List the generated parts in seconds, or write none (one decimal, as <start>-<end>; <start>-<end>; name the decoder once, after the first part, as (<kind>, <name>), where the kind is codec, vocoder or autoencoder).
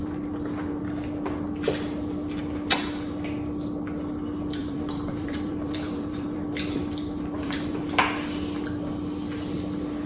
0.0-0.8 (vocoder, BigVGAN v2); 4.6-7.8